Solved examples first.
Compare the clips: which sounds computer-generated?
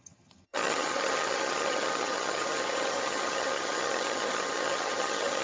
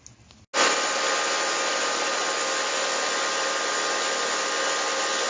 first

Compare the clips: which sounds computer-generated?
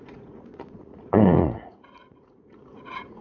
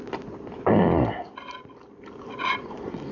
first